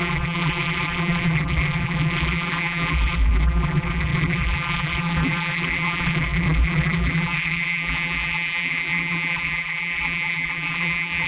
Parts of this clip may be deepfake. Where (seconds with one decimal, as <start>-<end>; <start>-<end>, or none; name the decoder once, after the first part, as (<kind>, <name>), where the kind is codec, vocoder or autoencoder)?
0.0-11.3 (vocoder, BigVGAN v2)